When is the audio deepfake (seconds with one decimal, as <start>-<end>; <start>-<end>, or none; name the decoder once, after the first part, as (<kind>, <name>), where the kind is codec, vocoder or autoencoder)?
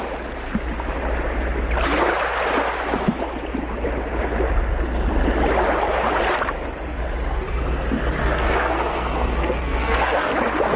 8.2-10.3 (codec, SNAC)